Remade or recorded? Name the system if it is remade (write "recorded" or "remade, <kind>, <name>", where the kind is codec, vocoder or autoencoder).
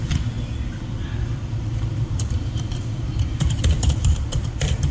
remade, vocoder, BigVGAN v2